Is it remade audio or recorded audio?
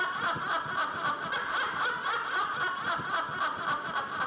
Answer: recorded